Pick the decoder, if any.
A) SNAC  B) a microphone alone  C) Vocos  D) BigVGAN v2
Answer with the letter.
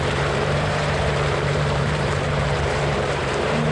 D